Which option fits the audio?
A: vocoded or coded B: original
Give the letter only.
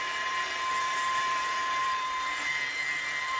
A